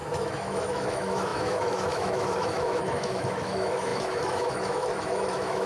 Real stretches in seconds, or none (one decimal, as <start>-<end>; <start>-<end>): none